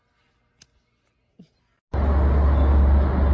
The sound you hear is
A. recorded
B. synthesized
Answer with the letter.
A